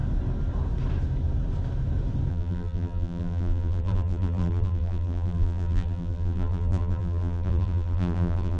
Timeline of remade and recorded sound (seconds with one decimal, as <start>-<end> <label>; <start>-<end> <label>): 0.0-2.3 recorded; 2.3-8.6 remade